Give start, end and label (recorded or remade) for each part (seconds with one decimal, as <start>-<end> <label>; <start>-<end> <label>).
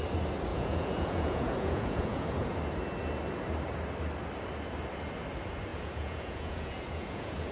0.0-0.5 recorded; 0.5-2.5 remade; 2.5-5.7 recorded; 5.7-7.5 remade